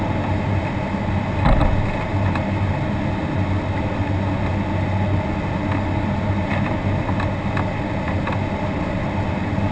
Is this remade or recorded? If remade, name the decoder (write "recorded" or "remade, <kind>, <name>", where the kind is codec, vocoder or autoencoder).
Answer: recorded